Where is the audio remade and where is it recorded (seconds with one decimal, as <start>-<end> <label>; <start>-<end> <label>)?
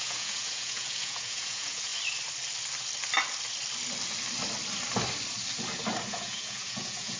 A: 0.0-1.9 remade; 1.9-6.1 recorded; 6.1-7.2 remade